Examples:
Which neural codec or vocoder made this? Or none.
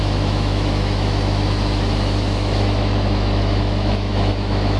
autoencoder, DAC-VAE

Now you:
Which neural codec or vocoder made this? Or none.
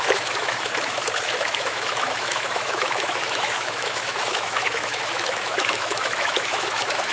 autoencoder, DAC-VAE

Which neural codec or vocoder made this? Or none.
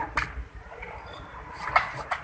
vocoder, BigVGAN v2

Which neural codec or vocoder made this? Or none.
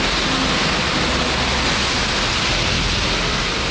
none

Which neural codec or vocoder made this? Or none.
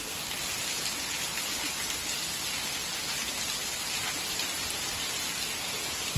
none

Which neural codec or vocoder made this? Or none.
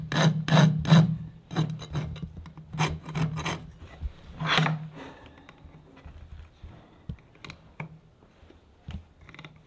none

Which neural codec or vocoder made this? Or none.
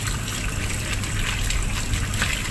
none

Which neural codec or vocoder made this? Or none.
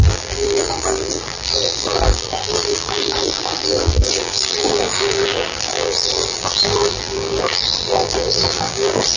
vocoder, BigVGAN v2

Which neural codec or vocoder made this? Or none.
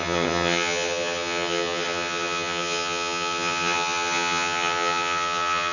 vocoder, HiFi-GAN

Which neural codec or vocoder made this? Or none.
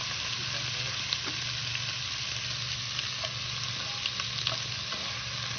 none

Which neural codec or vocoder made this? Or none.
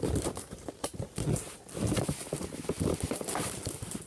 none